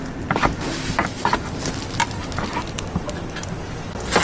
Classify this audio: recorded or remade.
recorded